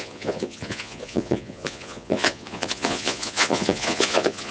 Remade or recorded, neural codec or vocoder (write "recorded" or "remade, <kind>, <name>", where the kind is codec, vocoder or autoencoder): remade, vocoder, Vocos